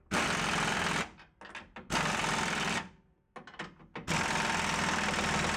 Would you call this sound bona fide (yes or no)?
yes